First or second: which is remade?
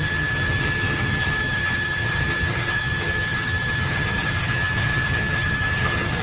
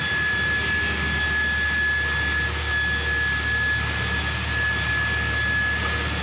first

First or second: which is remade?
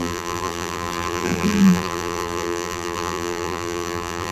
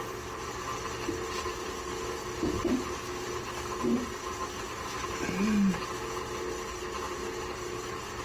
first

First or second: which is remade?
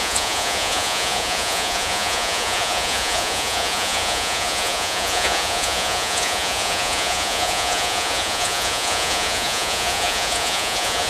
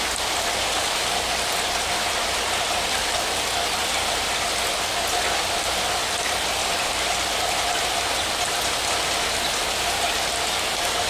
first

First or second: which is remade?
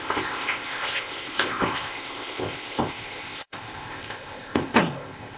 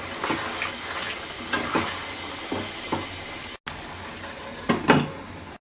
first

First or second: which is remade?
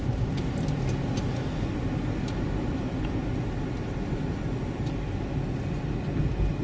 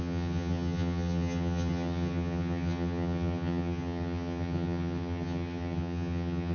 second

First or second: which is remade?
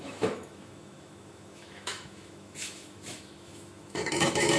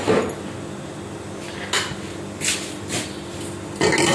first